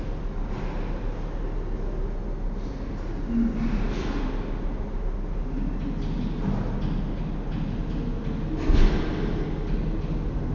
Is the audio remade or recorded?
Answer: recorded